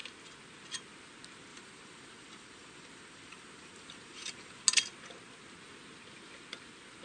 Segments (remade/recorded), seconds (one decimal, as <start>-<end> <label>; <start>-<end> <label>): 0.0-1.5 recorded; 1.5-4.6 remade; 4.6-7.0 recorded